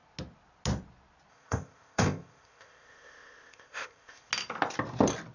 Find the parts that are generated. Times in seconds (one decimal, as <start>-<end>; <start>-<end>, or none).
1.3-4.3